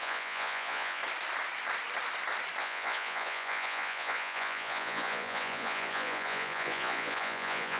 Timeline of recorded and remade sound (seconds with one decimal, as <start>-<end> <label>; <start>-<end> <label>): 0.0-1.0 remade; 1.0-2.6 recorded; 2.6-7.8 remade